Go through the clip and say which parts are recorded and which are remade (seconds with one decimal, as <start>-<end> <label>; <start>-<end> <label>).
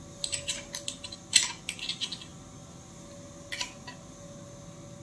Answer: 0.0-5.0 recorded